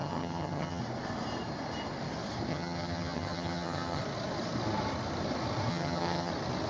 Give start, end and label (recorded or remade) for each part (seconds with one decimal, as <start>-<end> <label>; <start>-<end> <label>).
0.0-0.8 remade; 0.8-2.5 recorded; 2.5-4.0 remade; 4.0-5.7 recorded; 5.7-6.3 remade; 6.3-6.7 recorded